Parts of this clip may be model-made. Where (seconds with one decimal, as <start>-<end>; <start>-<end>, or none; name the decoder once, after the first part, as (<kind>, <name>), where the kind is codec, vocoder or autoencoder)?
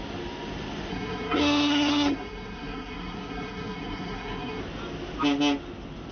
0.9-4.6 (codec, SNAC)